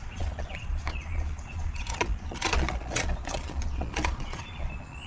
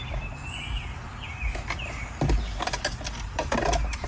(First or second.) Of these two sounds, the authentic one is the second